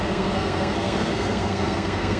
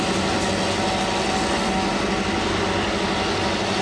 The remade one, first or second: first